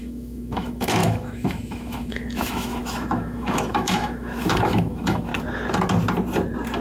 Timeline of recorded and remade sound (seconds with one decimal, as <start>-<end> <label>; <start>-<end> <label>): 0.0-5.3 remade; 5.3-6.8 recorded